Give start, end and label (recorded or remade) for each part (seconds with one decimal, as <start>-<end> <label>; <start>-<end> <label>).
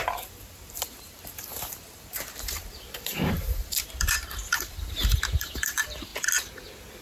0.0-6.1 remade; 6.1-7.0 recorded